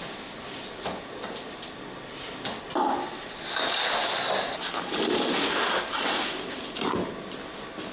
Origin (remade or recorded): recorded